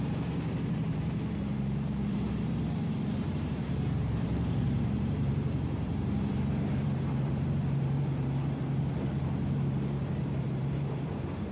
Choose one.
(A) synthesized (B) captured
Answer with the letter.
A